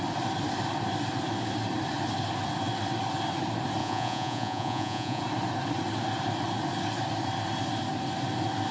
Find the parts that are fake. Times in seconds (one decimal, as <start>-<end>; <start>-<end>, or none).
3.8-5.2